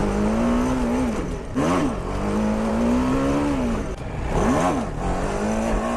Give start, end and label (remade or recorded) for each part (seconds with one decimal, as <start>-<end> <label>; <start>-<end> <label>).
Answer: 0.0-6.0 recorded